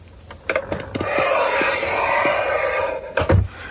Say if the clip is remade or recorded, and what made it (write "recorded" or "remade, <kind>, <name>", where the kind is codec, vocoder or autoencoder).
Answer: recorded